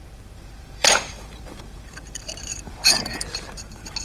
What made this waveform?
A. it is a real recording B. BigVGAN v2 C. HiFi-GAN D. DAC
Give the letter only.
B